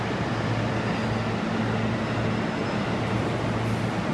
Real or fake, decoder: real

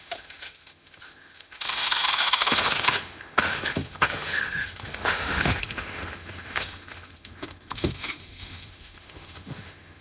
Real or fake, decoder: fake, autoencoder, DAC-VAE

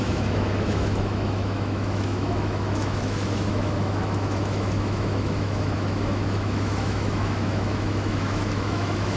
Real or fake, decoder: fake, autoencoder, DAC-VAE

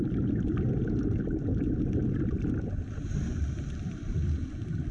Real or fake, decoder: real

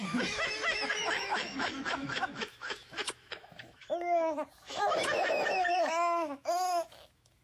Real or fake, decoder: fake, autoencoder, DAC-VAE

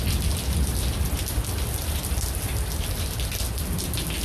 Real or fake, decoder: real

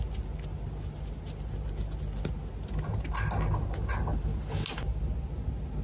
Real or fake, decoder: real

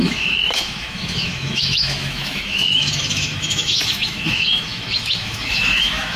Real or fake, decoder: fake, autoencoder, DAC-VAE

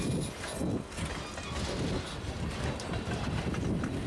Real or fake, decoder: real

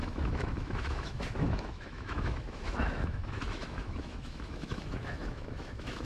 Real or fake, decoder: fake, autoencoder, DAC-VAE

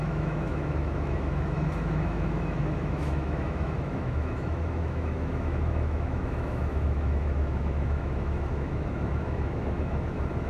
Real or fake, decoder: fake, autoencoder, DAC-VAE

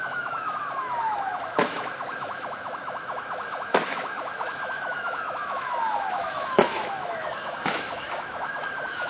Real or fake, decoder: fake, autoencoder, DAC-VAE